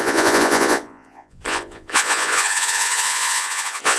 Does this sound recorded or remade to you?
remade